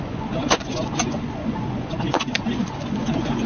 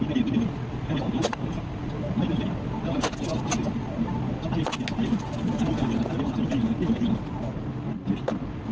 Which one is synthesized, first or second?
first